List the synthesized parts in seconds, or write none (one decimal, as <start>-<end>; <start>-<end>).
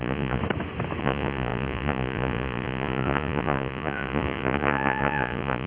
0.0-0.4; 1.0-5.7